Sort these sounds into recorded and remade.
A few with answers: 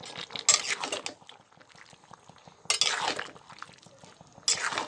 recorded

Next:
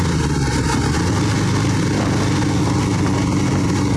recorded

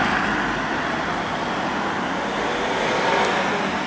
recorded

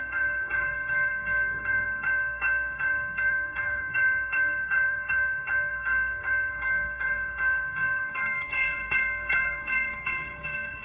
remade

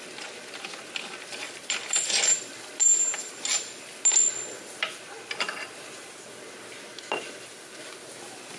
recorded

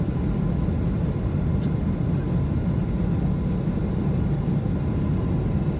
recorded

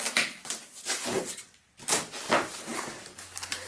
recorded